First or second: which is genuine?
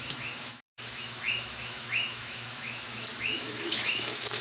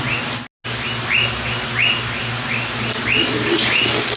second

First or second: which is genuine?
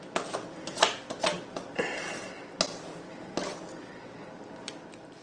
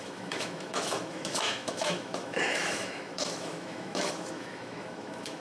first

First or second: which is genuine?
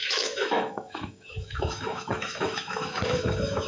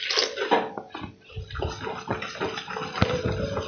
second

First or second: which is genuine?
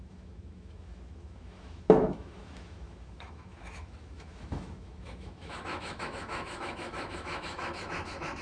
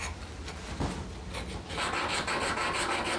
second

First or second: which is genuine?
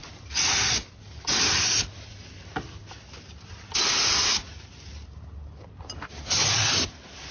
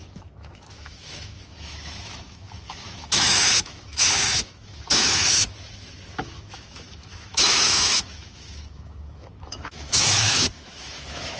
first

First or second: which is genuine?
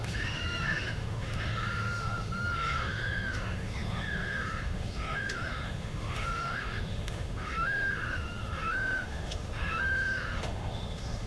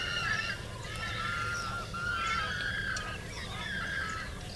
second